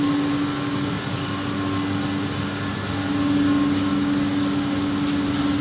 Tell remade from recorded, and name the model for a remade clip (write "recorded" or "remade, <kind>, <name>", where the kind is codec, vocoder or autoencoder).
recorded